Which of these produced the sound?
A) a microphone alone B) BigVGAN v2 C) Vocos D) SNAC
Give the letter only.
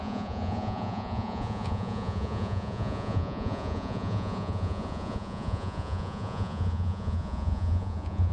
C